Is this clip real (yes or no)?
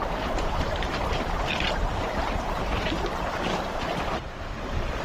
no